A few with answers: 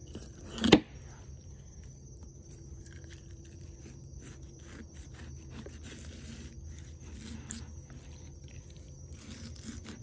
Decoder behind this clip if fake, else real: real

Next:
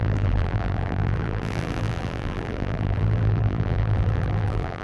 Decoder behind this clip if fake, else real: fake, vocoder, BigVGAN v2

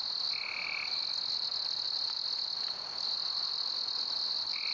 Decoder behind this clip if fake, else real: real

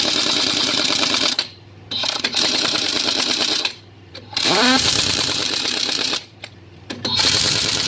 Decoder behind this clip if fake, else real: fake, vocoder, BigVGAN v2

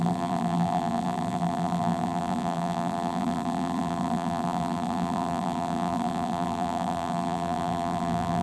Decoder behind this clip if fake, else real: fake, vocoder, BigVGAN v2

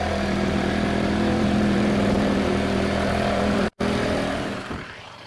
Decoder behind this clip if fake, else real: fake, vocoder, BigVGAN v2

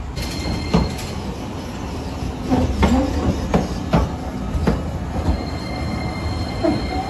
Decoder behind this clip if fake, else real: real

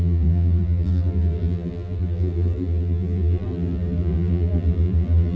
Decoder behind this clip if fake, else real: fake, vocoder, BigVGAN v2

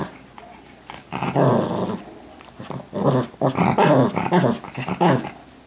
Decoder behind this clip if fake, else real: real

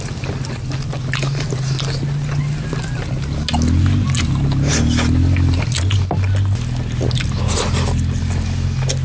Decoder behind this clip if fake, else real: real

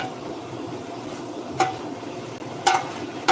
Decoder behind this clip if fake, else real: real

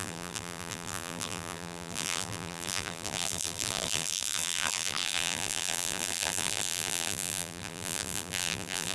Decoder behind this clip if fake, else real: fake, vocoder, BigVGAN v2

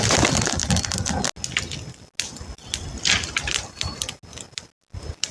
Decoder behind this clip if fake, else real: real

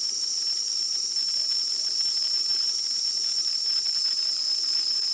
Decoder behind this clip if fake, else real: fake, vocoder, BigVGAN v2